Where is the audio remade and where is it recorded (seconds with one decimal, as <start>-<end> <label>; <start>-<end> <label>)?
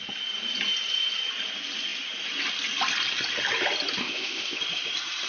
0.0-4.0 recorded; 4.0-4.6 remade; 4.6-5.3 recorded